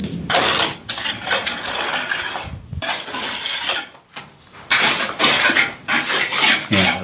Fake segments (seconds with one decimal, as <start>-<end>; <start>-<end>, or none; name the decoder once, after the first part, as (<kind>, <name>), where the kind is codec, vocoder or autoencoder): none